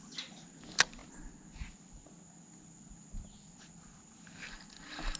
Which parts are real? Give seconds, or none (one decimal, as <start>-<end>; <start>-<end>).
0.0-5.2